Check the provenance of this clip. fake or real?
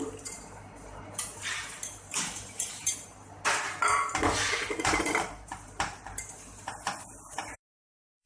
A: fake